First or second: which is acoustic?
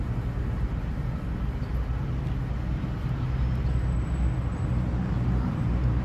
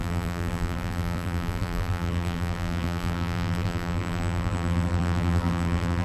first